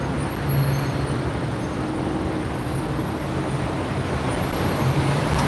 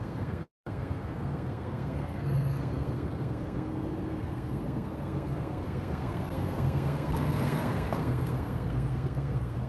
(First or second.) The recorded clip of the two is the first